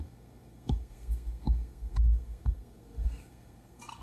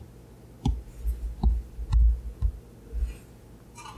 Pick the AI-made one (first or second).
first